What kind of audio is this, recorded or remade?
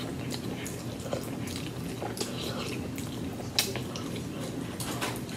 recorded